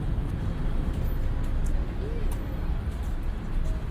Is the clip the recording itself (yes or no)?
yes